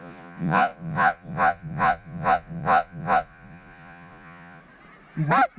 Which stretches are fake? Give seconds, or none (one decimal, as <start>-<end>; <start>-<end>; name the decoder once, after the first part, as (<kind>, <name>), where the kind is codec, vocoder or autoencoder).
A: 0.0-4.6 (vocoder, Vocos)

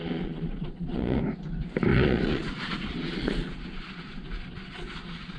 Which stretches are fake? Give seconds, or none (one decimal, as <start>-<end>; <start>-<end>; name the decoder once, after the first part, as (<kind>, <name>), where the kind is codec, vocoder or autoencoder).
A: 0.0-1.2 (vocoder, Vocos); 1.9-5.4

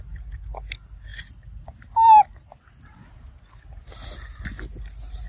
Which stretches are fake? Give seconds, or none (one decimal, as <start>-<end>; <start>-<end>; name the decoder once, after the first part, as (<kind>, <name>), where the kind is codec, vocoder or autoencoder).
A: none

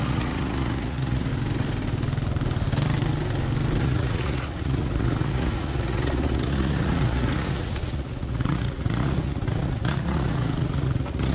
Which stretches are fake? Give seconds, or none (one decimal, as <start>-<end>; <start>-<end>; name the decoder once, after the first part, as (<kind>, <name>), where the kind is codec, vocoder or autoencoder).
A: 0.0-1.3 (vocoder, Vocos); 3.8-11.3

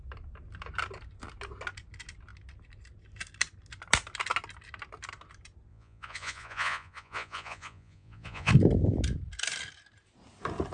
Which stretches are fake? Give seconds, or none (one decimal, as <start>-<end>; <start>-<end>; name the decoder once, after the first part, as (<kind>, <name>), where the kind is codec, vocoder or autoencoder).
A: 5.7-8.5 (vocoder, Vocos)

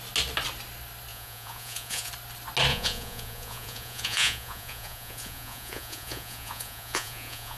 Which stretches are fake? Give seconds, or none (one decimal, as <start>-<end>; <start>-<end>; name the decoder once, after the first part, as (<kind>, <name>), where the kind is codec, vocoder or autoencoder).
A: 1.1-2.1 (vocoder, Vocos); 2.7-7.6